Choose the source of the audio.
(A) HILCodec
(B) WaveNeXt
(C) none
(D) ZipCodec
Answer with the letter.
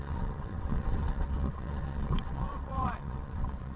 B